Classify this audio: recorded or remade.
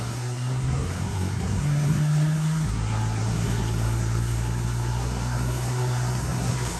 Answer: remade